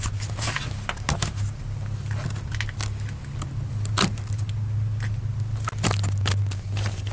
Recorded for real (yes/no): yes